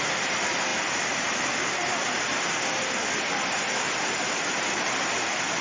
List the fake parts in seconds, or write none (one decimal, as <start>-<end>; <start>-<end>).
none